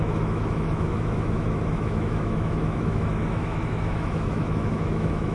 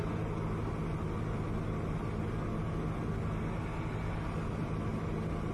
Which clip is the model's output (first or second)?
first